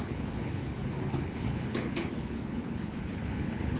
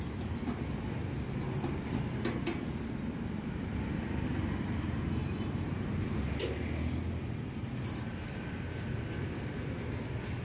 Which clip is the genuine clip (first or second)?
second